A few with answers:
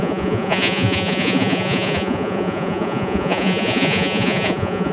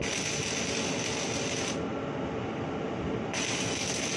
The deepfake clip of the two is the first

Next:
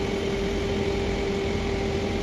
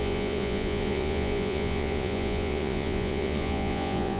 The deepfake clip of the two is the second